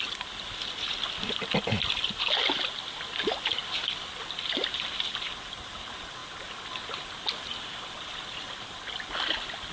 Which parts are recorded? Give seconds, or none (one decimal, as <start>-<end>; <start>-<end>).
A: 0.0-9.7